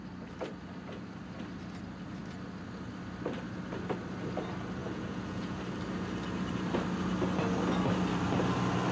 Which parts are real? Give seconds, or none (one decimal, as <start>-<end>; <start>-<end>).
0.0-4.8; 5.6-8.9